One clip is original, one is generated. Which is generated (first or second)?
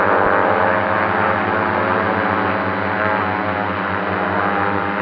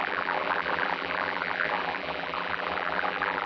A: second